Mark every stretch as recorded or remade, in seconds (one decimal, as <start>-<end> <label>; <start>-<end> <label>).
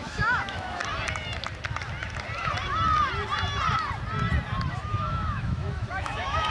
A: 0.0-0.8 remade; 0.8-4.7 recorded; 4.7-6.5 remade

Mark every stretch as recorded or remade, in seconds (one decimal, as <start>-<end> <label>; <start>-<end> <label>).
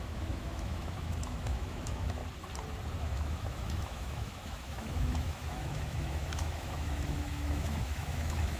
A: 0.0-2.2 remade; 2.2-3.0 recorded; 3.0-8.6 remade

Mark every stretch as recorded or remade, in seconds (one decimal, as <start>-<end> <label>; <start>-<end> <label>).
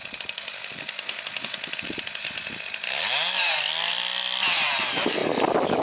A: 0.0-5.8 recorded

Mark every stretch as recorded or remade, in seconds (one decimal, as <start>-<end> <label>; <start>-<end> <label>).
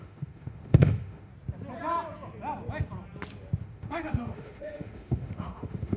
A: 0.0-1.3 remade; 1.3-3.6 recorded; 3.6-6.0 remade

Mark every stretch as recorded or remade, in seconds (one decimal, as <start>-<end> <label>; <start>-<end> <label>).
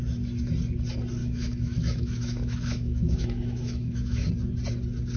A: 0.0-1.2 recorded; 1.2-4.3 remade; 4.3-5.2 recorded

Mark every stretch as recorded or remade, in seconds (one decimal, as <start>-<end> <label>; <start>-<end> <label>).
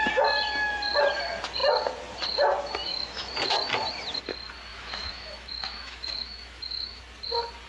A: 0.0-2.8 recorded; 2.8-3.3 remade; 3.3-4.7 recorded; 4.7-7.0 remade; 7.0-7.7 recorded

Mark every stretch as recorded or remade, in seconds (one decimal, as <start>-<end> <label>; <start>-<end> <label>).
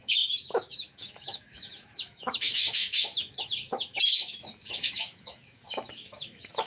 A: 0.0-6.7 remade